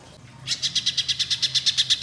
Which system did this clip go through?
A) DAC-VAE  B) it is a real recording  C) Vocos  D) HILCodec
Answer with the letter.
B